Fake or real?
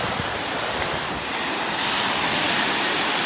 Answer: real